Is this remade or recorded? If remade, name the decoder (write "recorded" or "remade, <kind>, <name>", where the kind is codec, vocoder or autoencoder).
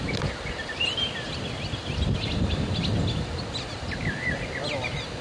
recorded